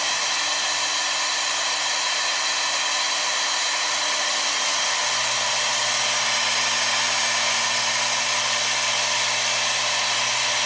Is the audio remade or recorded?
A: recorded